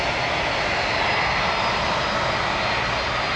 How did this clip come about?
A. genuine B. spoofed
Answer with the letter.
A